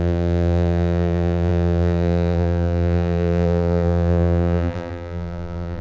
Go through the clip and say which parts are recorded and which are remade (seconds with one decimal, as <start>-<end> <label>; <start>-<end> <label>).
0.0-5.8 remade